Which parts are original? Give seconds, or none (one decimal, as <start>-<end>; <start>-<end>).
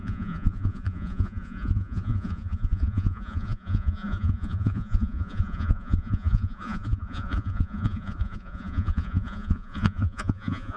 none